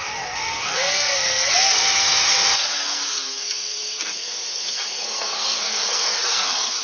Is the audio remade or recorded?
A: remade